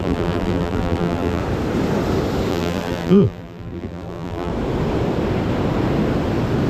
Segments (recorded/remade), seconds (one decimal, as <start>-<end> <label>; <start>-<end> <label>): 0.0-1.4 remade; 1.4-2.5 recorded; 2.5-4.5 remade; 4.5-6.7 recorded